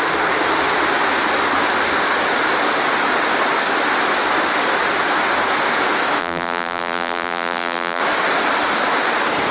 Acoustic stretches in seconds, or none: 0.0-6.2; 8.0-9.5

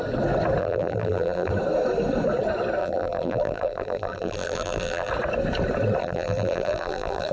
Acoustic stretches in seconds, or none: 0.0-0.6; 1.5-2.8; 5.1-6.0

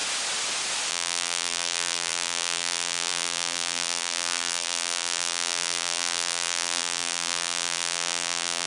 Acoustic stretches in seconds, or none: 0.0-0.9

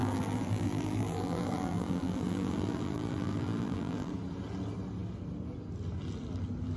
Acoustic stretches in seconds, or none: 4.1-6.8